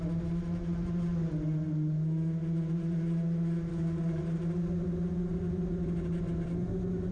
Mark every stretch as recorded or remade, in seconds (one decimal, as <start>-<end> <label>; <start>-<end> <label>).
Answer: 0.0-3.7 recorded; 3.7-4.2 remade; 4.2-7.1 recorded